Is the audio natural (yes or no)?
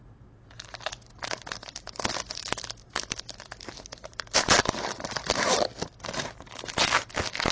yes